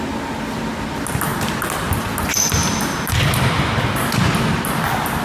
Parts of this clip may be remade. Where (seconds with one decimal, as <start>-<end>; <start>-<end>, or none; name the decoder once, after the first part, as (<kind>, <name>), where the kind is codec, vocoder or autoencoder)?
none